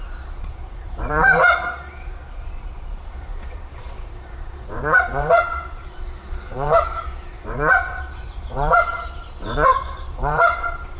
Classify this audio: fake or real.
fake